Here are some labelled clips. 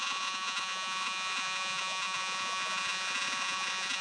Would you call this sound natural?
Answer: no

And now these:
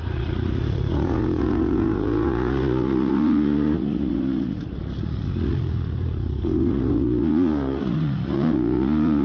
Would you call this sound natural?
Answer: no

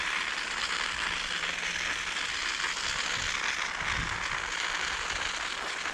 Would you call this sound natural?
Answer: yes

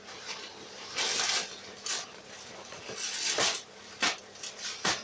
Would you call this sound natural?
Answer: yes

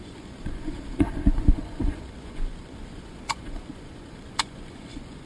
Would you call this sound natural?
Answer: no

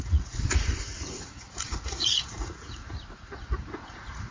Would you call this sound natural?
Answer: no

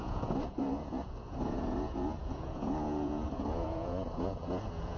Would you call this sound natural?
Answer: no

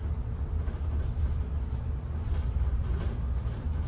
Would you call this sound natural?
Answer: yes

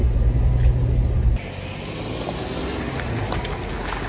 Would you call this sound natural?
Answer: yes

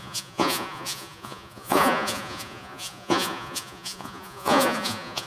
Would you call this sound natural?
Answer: no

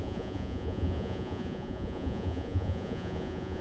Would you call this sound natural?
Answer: no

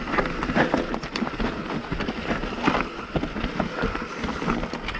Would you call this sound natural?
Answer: yes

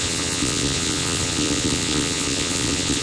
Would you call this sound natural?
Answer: no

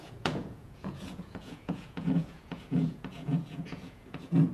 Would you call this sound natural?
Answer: no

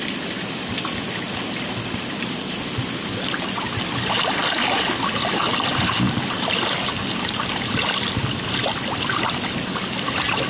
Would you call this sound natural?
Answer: yes